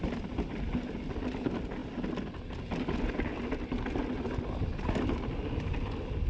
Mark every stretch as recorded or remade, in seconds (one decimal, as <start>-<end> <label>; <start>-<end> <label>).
0.0-6.3 recorded

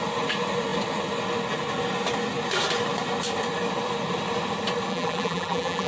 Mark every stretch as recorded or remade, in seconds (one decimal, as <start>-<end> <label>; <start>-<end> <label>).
0.0-4.9 recorded; 4.9-5.9 remade

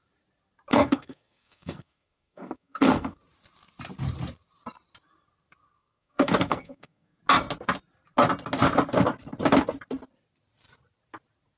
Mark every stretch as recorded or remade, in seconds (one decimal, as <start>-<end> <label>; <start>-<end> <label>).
0.0-0.7 recorded; 0.7-3.2 remade; 3.2-5.8 recorded; 5.8-7.2 remade; 7.2-11.6 recorded

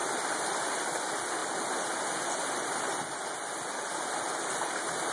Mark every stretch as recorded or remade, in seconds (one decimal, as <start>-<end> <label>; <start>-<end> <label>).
0.0-1.4 remade; 1.4-4.3 recorded; 4.3-5.1 remade

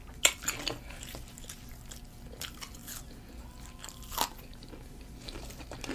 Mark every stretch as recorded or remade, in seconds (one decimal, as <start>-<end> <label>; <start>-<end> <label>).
0.0-5.9 recorded

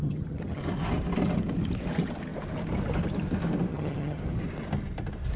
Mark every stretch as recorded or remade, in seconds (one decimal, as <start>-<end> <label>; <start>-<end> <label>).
0.0-0.6 remade; 0.6-3.7 recorded; 3.7-4.2 remade; 4.2-5.4 recorded